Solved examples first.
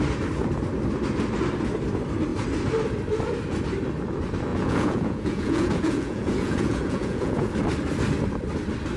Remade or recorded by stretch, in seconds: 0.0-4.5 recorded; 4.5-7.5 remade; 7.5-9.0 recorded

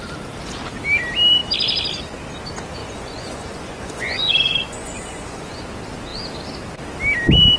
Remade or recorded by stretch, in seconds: 0.0-2.8 recorded; 2.8-5.6 remade; 5.6-7.6 recorded

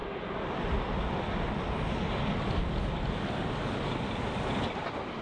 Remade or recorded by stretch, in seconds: 0.0-5.2 recorded